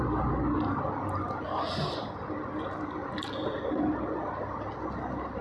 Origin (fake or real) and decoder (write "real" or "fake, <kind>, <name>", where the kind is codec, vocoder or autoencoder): real